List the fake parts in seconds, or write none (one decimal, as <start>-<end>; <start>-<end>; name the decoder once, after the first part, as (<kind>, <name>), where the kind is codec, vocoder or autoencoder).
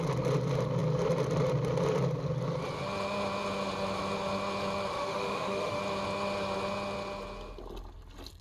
4.9-5.8 (autoencoder, DAC-VAE)